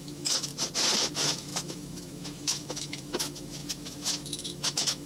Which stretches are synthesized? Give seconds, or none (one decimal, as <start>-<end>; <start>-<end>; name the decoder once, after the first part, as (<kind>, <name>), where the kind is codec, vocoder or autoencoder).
0.0-0.5 (autoencoder, DAC-VAE); 1.1-5.1